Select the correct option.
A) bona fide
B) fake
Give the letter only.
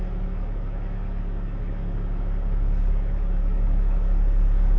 B